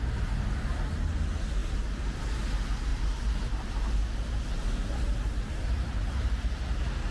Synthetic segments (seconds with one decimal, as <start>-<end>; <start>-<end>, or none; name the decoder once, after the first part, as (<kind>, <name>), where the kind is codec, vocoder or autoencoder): 2.9-7.1 (vocoder, BigVGAN v2)